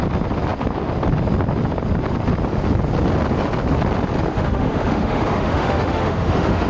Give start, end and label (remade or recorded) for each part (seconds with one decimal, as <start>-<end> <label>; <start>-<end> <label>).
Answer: 0.0-4.3 recorded; 4.3-6.7 remade